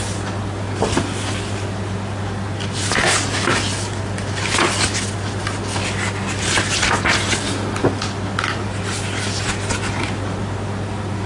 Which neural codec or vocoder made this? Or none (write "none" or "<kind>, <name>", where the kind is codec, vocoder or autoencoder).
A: none